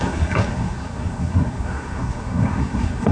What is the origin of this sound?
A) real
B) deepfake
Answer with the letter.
B